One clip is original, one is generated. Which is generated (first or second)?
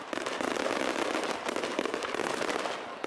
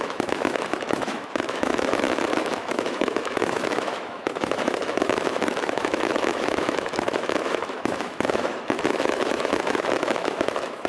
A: second